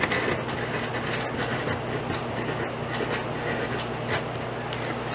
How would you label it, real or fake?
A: real